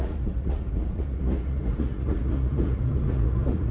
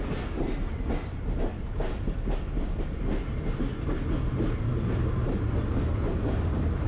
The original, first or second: second